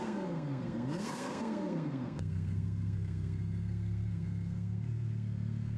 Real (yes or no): no